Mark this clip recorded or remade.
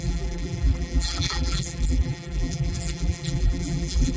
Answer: remade